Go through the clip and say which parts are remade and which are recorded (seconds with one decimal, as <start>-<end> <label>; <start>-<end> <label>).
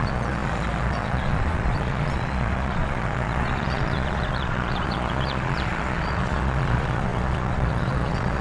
0.0-8.4 remade